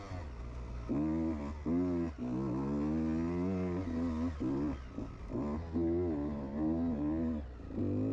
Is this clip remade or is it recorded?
recorded